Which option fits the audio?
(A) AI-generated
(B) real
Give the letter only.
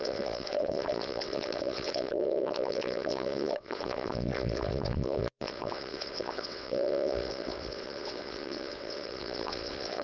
A